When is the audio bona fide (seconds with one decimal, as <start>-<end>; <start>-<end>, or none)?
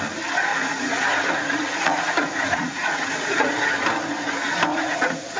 0.0-0.5; 3.7-4.7